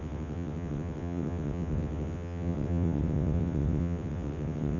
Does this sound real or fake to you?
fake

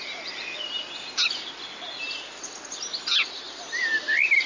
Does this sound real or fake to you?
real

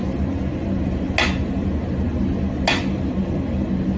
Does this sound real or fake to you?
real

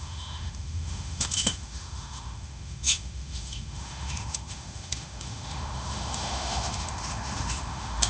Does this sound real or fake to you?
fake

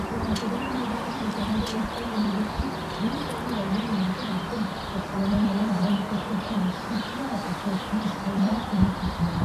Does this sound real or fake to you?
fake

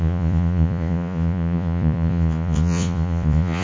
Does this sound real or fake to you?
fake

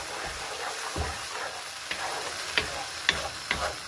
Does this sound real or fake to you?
real